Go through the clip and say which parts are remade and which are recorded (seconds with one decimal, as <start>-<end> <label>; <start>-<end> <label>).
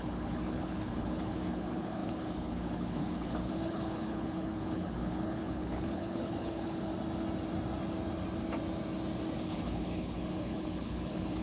0.0-6.9 remade; 6.9-9.4 recorded; 9.4-11.4 remade